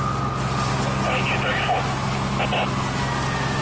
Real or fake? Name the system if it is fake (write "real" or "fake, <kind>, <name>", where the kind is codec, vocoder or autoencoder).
real